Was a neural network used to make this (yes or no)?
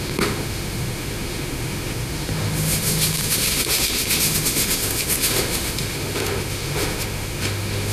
yes